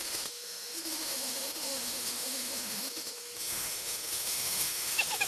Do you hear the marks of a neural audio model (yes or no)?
yes